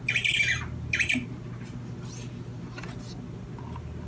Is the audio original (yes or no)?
yes